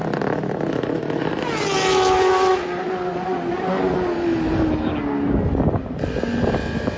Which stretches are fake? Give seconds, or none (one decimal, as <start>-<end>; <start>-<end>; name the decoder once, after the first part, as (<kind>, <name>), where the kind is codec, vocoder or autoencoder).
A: none